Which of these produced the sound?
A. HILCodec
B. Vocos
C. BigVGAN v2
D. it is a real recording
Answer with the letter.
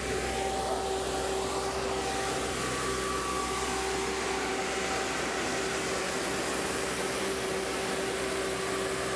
D